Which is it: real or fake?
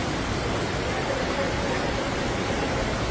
real